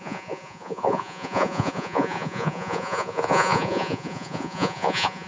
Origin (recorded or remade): remade